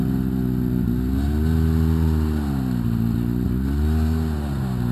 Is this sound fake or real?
real